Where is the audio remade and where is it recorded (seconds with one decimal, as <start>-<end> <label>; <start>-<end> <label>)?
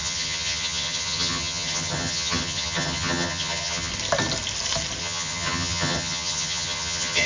0.0-3.9 remade; 3.9-5.0 recorded; 5.0-7.3 remade